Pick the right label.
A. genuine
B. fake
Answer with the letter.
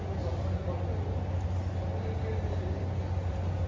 A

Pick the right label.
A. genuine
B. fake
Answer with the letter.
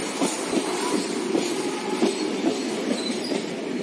A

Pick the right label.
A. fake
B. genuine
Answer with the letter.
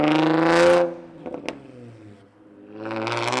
B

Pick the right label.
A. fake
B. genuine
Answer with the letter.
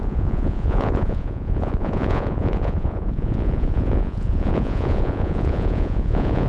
A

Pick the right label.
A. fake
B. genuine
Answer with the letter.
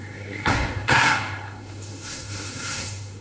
A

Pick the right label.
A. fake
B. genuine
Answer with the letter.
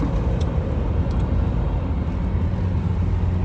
B